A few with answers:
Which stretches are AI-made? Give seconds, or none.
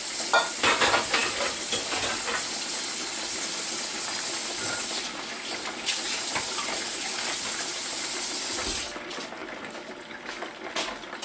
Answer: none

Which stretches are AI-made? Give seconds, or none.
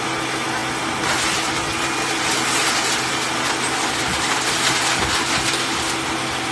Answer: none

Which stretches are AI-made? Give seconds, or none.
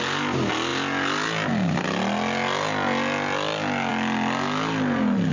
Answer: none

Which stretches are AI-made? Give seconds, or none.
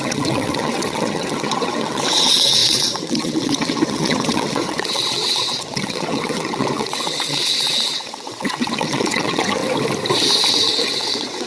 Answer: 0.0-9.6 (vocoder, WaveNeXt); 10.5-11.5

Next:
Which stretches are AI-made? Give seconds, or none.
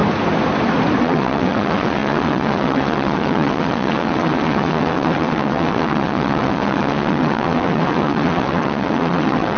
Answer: 1.0-9.6 (vocoder, WaveNeXt)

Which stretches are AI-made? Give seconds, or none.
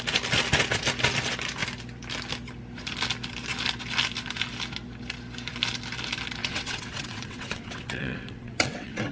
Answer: 6.4-9.1 (vocoder, WaveNeXt)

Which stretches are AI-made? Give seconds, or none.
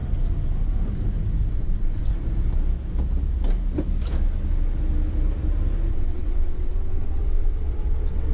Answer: 1.5-2.1 (vocoder, WaveNeXt); 5.9-8.3